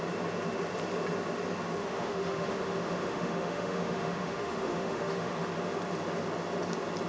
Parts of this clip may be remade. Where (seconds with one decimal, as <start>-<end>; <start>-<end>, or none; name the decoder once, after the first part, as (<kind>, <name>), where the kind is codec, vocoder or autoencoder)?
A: 1.8-5.3 (autoencoder, DAC-VAE)